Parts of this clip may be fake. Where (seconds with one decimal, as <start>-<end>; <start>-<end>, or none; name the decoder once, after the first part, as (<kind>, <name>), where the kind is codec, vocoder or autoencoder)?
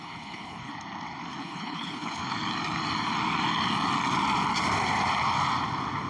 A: 0.0-0.7 (codec, HILCodec); 1.4-2.2